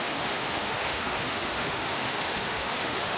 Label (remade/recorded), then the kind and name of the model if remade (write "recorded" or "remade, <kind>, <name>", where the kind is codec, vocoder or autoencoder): remade, autoencoder, DAC-VAE